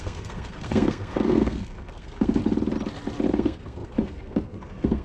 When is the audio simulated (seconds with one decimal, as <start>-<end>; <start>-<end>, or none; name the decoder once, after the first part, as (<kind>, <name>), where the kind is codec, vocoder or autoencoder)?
0.0-2.4 (codec, SNAC); 3.3-5.0